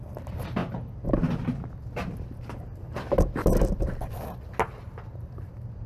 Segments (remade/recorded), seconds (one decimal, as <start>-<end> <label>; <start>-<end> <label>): 0.0-5.9 recorded